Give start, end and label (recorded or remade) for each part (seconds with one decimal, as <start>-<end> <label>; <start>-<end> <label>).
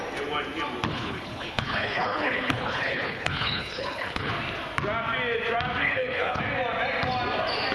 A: 0.0-0.9 recorded; 0.9-4.3 remade; 4.3-5.8 recorded; 5.8-6.4 remade; 6.4-7.7 recorded